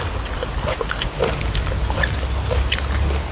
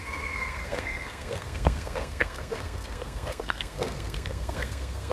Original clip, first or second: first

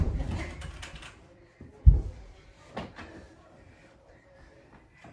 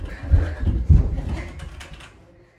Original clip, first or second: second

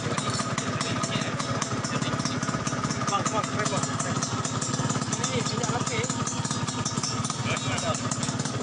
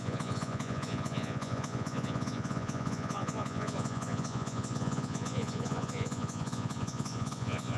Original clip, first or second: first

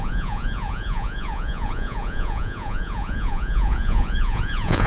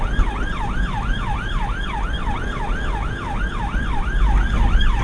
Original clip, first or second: second